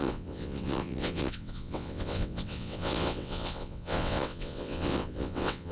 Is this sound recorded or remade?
remade